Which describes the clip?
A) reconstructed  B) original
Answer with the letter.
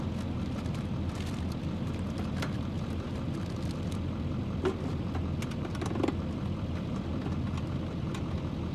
B